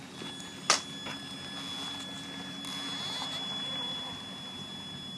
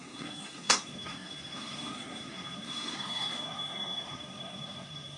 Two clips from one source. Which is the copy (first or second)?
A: second